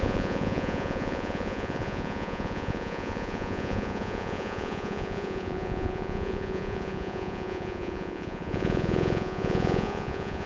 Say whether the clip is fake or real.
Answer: fake